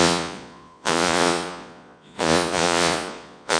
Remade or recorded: remade